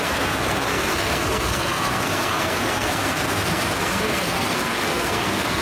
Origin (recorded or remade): remade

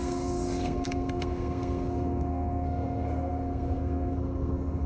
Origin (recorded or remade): remade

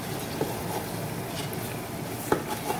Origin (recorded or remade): recorded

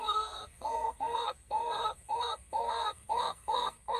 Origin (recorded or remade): remade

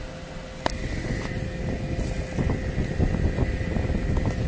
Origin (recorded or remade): recorded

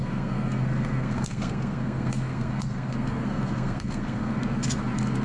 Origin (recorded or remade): remade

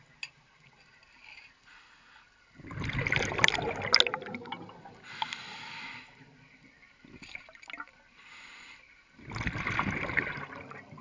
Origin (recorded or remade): recorded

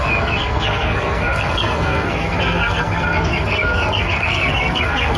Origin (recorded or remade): remade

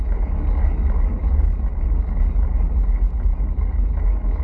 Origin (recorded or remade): recorded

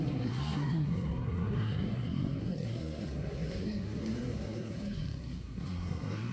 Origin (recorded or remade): remade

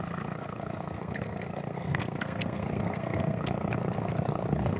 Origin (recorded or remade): remade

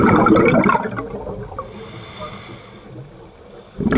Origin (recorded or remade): recorded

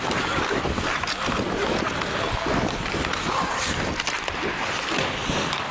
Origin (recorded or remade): recorded